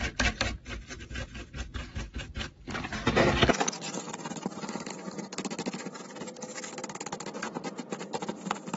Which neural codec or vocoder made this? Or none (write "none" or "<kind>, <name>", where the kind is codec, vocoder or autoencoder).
none